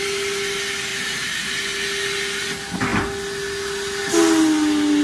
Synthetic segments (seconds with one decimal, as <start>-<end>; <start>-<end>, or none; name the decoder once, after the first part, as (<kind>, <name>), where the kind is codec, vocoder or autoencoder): 0.9-1.5 (vocoder, BigVGAN v2)